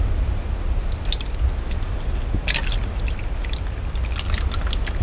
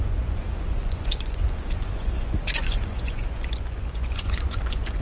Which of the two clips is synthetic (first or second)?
second